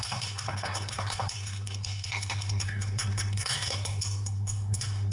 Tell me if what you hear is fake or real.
fake